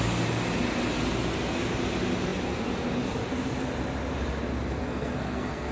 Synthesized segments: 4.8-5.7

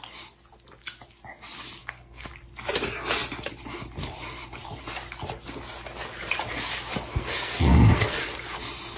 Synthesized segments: 1.8-2.3; 7.1-8.2